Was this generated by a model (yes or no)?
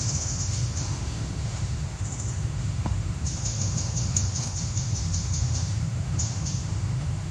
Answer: yes